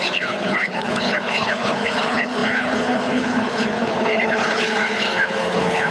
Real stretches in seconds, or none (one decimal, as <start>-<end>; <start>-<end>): none